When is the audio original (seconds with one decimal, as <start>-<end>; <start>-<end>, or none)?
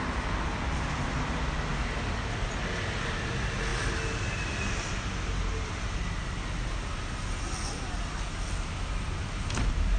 0.0-10.0